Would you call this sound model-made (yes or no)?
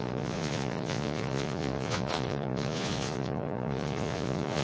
yes